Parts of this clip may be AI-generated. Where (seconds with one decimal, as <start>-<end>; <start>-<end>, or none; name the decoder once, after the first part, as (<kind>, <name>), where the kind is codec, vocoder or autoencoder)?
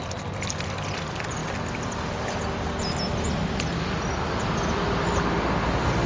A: none